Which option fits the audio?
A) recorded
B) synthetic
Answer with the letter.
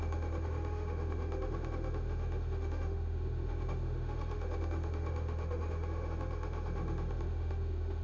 B